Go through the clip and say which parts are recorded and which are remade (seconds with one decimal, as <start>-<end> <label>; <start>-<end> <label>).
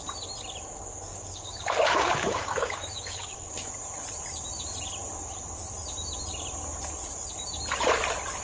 0.0-1.1 recorded; 1.1-3.5 remade; 3.5-8.4 recorded